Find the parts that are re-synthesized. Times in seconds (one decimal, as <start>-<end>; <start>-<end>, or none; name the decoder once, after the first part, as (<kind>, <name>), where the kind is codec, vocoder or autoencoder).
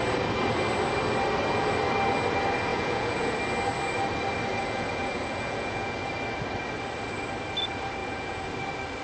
2.7-3.4 (vocoder, Vocos); 4.6-6.1; 8.0-8.5